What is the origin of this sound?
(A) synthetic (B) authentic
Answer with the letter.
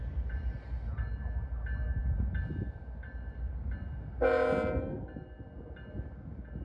B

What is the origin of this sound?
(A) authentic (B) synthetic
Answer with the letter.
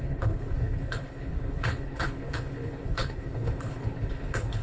B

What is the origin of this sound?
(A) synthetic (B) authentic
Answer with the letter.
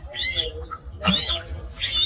A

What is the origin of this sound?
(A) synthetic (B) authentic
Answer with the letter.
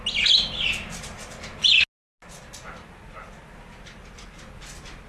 B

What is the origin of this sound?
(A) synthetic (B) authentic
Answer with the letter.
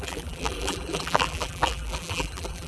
A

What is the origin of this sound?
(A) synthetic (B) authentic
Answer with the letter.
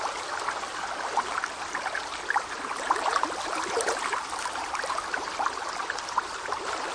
B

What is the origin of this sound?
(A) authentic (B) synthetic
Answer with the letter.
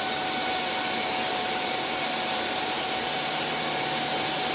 B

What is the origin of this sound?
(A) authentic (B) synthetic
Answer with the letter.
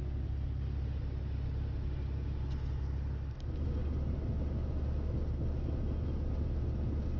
A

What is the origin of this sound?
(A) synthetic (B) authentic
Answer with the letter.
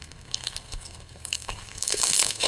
A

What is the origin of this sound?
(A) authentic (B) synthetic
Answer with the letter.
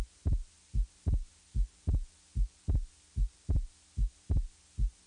A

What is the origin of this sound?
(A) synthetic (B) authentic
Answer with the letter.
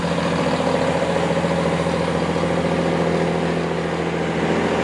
B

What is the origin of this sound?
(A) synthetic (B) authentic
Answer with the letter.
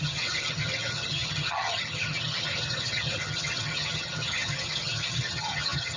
A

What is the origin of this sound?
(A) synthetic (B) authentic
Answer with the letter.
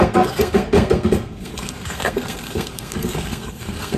A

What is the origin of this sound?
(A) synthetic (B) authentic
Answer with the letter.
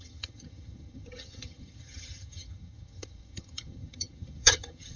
A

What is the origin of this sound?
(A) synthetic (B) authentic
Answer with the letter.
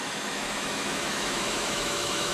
A